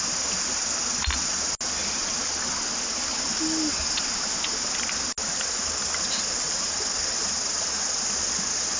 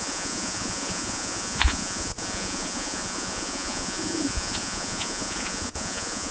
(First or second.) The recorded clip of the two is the first